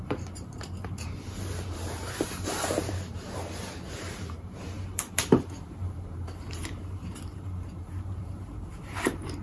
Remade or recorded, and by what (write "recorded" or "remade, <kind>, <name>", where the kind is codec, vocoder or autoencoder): remade, vocoder, BigVGAN v2